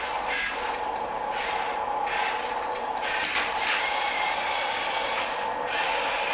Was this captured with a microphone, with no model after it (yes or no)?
yes